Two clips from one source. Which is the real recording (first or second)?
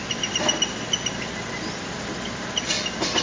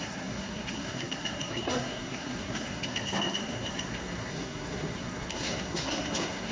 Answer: first